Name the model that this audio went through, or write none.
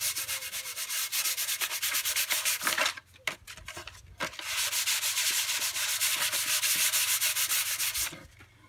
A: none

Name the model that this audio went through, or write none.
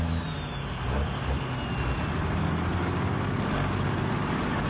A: none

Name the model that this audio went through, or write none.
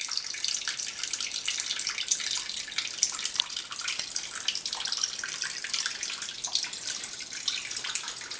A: vocoder, BigVGAN v2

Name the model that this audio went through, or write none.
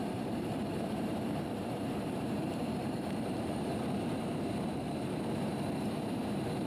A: vocoder, BigVGAN v2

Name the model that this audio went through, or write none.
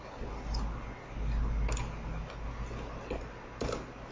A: none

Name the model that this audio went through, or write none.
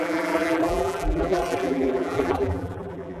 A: vocoder, BigVGAN v2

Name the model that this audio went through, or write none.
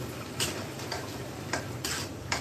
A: vocoder, BigVGAN v2